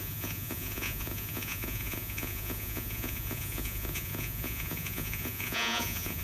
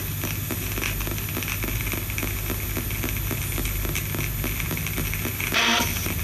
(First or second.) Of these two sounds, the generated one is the first